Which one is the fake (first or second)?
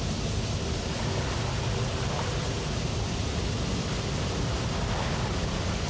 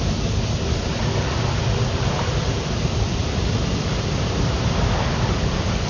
second